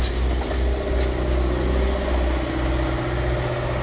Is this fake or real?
real